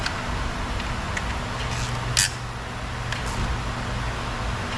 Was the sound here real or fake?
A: real